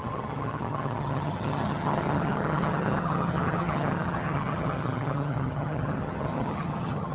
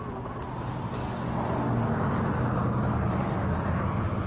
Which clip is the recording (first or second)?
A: second